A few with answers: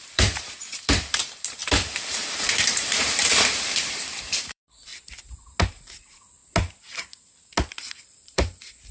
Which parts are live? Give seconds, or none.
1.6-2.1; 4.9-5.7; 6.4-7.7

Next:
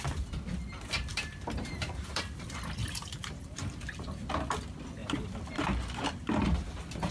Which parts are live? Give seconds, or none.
0.0-1.1; 2.2-2.8; 3.8-5.0; 5.6-7.1

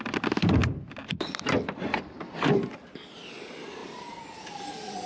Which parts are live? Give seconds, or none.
0.0-0.6; 3.3-3.8

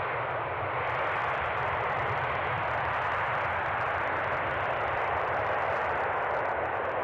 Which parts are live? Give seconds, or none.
0.0-1.2; 5.4-7.0

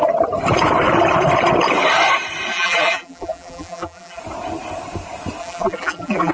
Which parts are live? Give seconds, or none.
0.0-2.5; 4.2-5.4

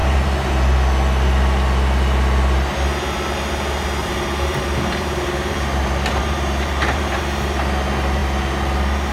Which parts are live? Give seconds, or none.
0.5-4.0; 7.2-9.1

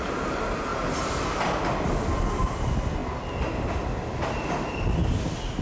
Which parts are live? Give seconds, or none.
0.0-5.6

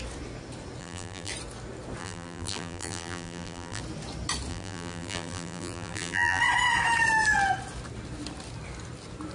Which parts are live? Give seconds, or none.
0.0-0.8; 1.3-2.0; 3.8-4.5; 6.4-9.3